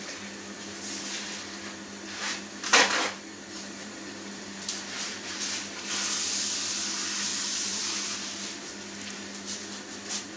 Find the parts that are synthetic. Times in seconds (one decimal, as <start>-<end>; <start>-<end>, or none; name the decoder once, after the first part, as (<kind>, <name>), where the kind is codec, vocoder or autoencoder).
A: 2.7-5.4 (vocoder, BigVGAN v2); 7.3-7.9